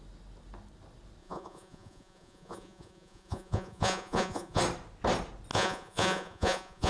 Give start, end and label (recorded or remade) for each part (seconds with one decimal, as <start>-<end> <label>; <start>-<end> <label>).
0.0-1.2 recorded; 1.2-4.6 remade; 4.6-5.5 recorded; 5.5-6.9 remade